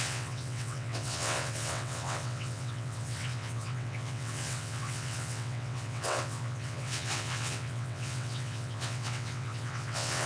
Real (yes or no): no